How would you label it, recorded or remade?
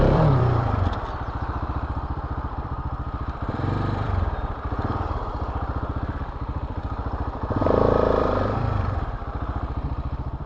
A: remade